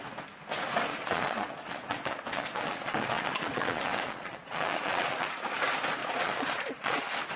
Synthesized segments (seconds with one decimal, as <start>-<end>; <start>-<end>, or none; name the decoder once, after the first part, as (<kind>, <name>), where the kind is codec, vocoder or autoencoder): 0.9-5.3 (vocoder, Vocos); 6.0-7.0